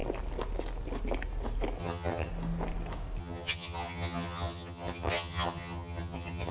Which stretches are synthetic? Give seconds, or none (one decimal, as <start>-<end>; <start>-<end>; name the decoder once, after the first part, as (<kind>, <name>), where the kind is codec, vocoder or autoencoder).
1.8-2.3 (vocoder, HiFi-GAN); 3.2-6.5